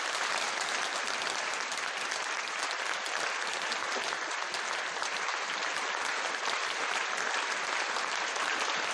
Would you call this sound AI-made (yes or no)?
yes